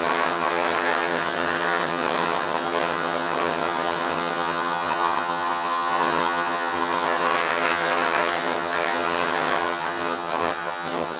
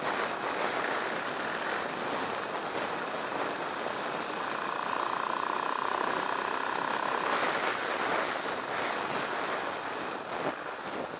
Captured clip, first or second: second